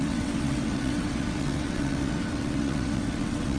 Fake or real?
fake